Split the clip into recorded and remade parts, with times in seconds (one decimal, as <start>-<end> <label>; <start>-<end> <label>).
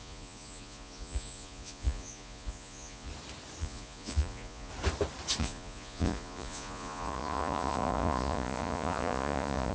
0.0-3.1 remade; 3.1-3.6 recorded; 3.6-4.7 remade; 4.7-5.4 recorded; 5.4-9.7 remade